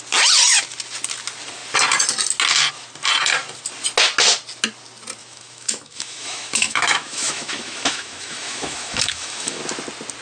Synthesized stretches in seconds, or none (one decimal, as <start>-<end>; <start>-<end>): 5.2-9.6